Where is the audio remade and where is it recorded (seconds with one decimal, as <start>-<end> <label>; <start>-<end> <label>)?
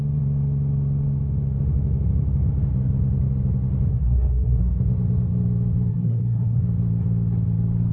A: 0.0-3.9 recorded; 3.9-4.6 remade; 4.6-5.9 recorded; 5.9-6.6 remade; 6.6-7.9 recorded